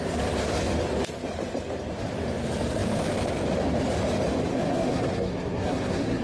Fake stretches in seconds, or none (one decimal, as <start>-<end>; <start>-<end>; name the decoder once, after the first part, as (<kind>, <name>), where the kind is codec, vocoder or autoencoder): 4.5-6.2 (codec, SNAC)